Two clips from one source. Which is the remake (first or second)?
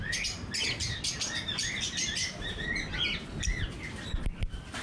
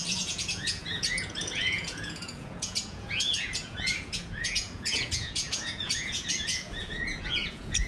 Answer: second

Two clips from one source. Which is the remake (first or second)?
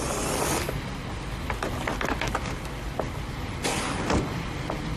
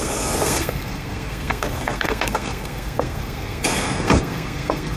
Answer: second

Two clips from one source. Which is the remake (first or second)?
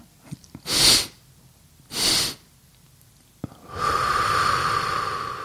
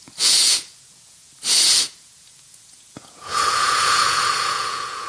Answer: second